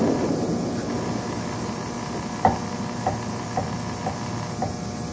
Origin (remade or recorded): recorded